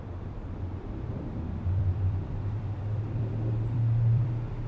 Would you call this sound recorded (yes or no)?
no